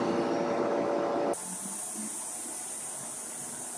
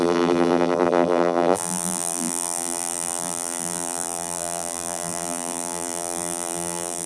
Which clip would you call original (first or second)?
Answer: first